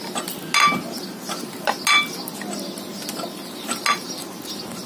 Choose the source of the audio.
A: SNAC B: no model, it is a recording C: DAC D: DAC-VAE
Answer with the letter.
B